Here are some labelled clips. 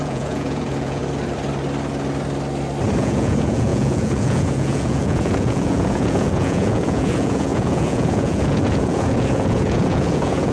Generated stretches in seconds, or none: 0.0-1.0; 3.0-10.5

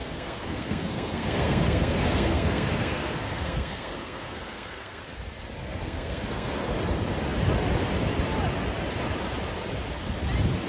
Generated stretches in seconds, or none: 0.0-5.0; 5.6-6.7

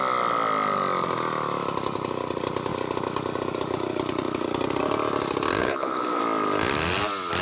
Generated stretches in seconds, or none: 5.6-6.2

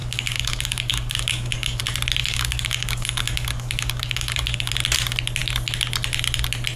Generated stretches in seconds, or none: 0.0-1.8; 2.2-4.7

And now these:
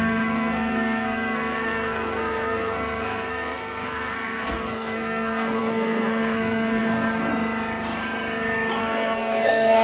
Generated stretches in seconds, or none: 0.0-7.3; 8.8-9.8

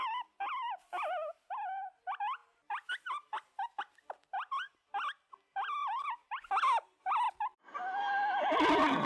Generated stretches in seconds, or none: none